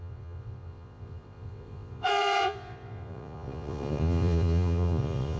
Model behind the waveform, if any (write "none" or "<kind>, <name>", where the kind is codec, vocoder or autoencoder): vocoder, Vocos